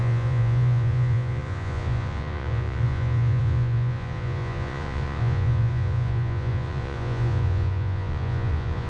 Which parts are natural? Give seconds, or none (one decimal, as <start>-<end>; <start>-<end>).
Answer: none